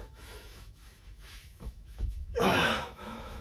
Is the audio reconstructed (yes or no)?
yes